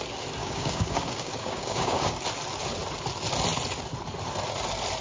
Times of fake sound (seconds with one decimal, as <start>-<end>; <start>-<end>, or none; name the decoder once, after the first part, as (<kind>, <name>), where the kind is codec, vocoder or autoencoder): 0.4-2.2 (codec, DAC)